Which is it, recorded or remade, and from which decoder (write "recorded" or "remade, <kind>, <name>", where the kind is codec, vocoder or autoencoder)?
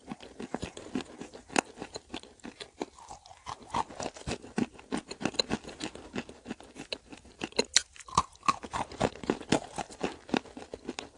recorded